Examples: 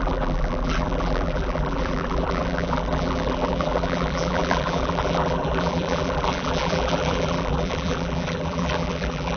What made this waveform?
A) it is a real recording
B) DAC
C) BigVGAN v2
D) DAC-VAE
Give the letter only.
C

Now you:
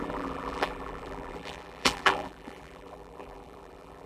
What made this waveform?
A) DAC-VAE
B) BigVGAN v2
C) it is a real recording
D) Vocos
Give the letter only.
B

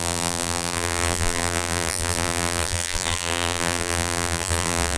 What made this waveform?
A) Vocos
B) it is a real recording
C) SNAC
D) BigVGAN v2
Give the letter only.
D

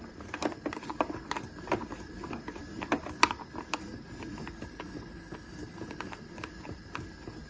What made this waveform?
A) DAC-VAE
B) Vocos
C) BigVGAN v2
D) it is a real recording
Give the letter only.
D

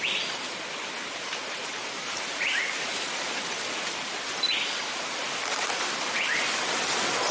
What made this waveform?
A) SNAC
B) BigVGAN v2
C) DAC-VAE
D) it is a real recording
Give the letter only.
D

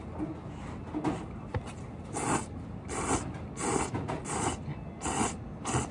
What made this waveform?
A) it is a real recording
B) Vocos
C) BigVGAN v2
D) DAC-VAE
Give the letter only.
A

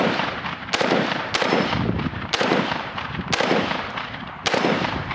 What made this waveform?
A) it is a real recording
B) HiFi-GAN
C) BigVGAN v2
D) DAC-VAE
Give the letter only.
C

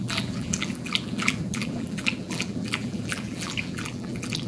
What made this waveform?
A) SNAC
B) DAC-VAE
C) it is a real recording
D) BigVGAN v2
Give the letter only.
D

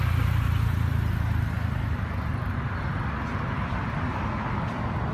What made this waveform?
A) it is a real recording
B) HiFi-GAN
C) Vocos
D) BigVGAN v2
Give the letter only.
A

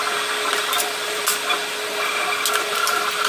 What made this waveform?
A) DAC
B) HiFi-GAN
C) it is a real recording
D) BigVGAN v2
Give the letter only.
C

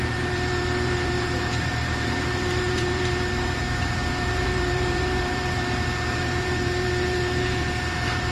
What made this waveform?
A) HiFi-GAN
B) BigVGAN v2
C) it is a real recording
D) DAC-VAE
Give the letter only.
B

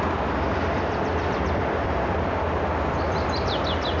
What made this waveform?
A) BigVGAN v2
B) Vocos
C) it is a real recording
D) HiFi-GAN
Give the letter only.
A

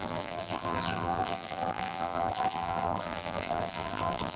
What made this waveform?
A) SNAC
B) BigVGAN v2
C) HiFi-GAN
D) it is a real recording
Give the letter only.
B